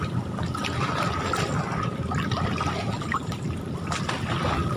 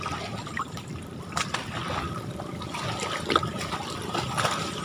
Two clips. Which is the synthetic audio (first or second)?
second